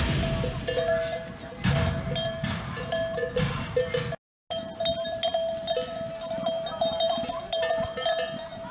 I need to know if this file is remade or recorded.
recorded